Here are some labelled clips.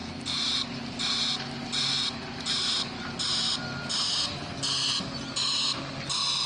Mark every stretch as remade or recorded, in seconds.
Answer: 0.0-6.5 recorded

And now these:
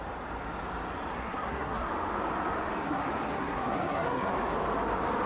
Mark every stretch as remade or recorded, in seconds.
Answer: 0.0-1.1 recorded; 1.1-1.9 remade; 1.9-2.8 recorded; 2.8-4.3 remade; 4.3-5.3 recorded

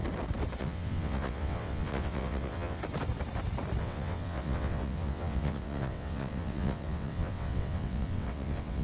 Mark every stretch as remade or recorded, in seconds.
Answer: 0.0-0.6 recorded; 0.6-2.8 remade; 2.8-3.8 recorded; 3.8-8.8 remade

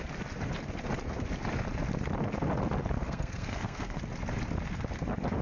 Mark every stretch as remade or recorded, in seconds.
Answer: 0.0-3.0 recorded; 3.0-4.0 remade; 4.0-5.4 recorded

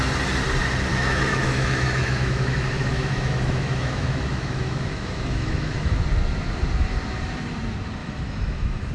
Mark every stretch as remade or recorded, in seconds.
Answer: 0.0-0.9 recorded; 0.9-5.9 remade; 5.9-8.0 recorded; 8.0-8.9 remade

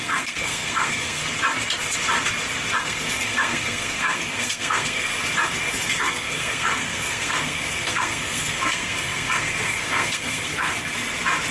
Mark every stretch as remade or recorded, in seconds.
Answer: 0.0-1.2 remade; 1.2-2.8 recorded; 2.8-5.1 remade; 5.1-5.7 recorded; 5.7-10.7 remade; 10.7-11.5 recorded